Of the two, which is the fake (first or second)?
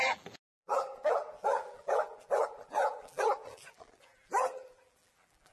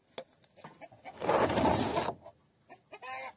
first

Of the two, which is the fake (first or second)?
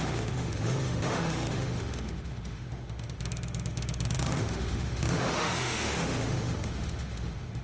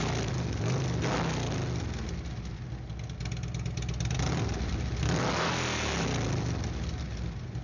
first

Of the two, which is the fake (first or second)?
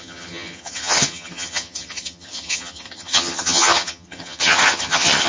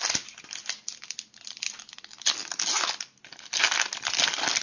first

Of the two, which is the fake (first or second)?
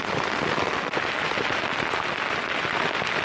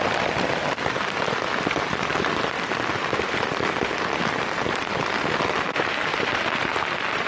second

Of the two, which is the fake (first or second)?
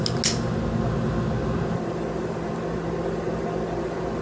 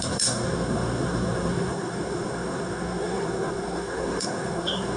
second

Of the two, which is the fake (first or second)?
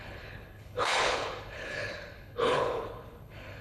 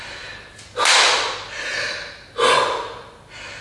first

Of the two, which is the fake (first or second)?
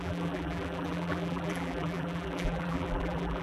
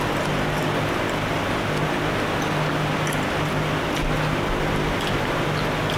first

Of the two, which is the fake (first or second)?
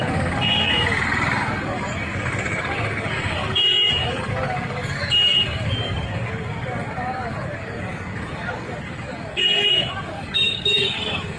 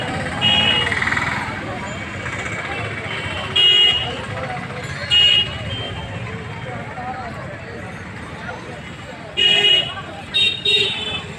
first